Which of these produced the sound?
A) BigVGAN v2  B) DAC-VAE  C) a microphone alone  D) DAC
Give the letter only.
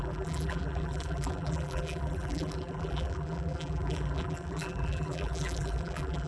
A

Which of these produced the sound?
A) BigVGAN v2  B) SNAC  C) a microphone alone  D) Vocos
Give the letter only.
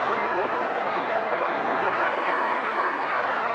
B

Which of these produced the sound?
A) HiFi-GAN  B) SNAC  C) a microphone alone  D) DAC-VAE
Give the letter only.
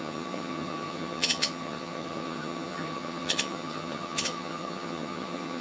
A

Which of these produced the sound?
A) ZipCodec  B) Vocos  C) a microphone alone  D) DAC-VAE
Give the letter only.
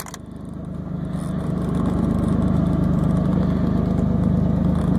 C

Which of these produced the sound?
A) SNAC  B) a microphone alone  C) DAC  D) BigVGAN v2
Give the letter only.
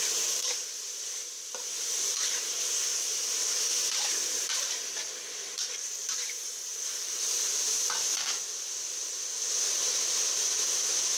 D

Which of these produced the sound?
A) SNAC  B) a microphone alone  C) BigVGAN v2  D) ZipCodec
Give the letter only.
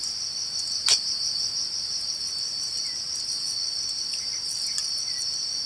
B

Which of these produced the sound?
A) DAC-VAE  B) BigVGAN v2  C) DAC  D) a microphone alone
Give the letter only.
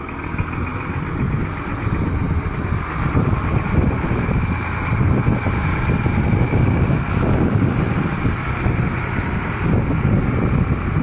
D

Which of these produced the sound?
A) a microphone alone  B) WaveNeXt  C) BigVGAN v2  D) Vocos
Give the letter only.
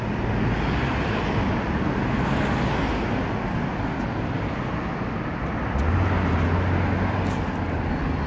A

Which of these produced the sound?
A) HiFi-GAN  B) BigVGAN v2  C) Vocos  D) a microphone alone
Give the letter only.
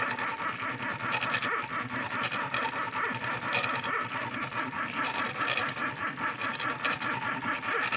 B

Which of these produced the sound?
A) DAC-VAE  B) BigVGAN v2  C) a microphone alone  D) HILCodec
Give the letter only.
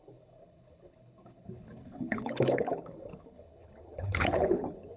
D